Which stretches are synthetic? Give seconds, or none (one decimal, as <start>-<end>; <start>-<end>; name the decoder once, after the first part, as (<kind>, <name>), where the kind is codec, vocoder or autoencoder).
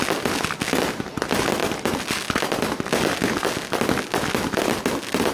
none